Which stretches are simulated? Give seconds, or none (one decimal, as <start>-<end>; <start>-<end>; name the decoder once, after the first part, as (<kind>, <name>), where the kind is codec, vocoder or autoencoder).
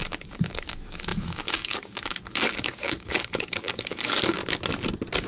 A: 0.0-4.4 (codec, DAC)